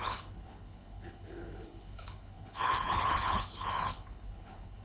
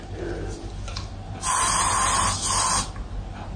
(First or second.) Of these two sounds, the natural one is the second